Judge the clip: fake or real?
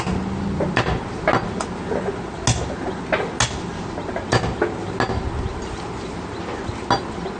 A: real